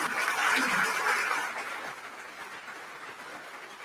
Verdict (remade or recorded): recorded